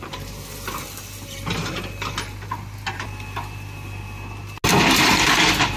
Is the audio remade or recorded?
recorded